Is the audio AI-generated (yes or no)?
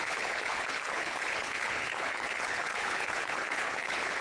yes